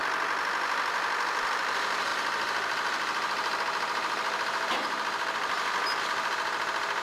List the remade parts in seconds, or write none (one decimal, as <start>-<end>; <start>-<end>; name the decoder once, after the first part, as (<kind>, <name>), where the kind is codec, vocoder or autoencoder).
0.0-7.0 (vocoder, BigVGAN v2)